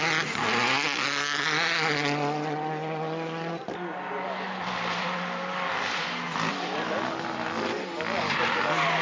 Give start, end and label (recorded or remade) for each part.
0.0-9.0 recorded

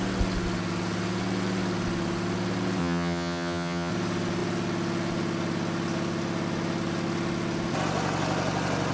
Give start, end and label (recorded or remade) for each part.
0.0-2.8 recorded; 2.8-3.9 remade; 3.9-8.9 recorded

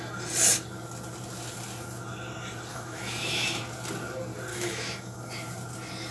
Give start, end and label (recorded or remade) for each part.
0.0-2.7 recorded; 2.7-3.6 remade; 3.6-4.5 recorded; 4.5-5.3 remade; 5.3-6.1 recorded

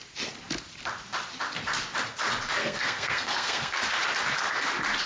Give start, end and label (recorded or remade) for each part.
0.0-2.6 recorded; 2.6-3.8 remade; 3.8-5.1 recorded

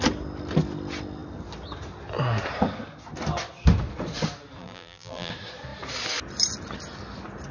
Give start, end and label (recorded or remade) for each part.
0.0-4.6 recorded; 4.6-5.3 remade; 5.3-7.5 recorded

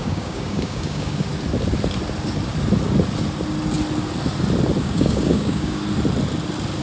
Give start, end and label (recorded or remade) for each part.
0.0-1.3 remade; 1.3-4.8 recorded; 4.8-5.8 remade; 5.8-6.8 recorded

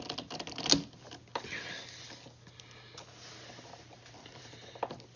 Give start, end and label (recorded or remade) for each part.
0.0-5.2 recorded